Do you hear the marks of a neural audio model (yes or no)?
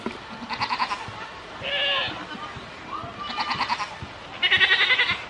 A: no